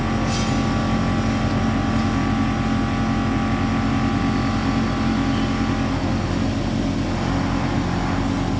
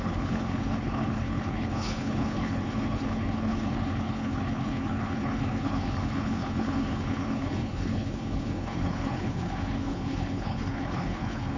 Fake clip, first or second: second